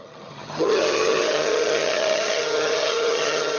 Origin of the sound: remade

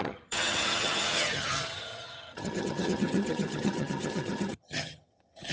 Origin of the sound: remade